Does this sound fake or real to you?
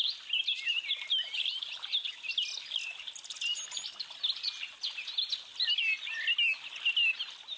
real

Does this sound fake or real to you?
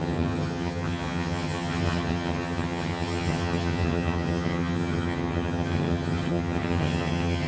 fake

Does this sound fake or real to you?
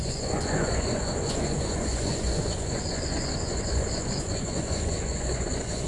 fake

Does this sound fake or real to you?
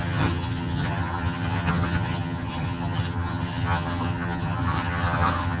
fake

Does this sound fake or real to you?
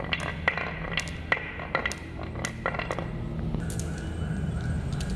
real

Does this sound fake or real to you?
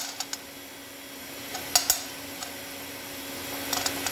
real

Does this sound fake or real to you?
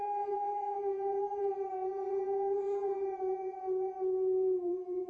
fake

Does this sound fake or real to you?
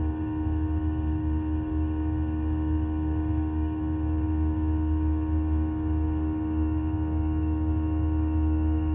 fake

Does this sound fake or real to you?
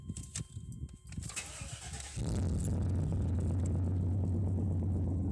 real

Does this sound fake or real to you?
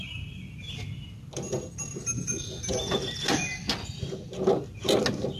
real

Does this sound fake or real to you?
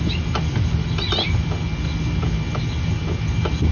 real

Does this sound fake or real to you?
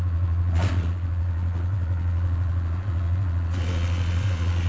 fake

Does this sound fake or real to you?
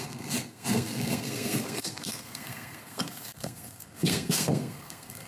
fake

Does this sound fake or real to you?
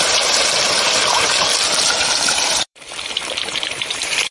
fake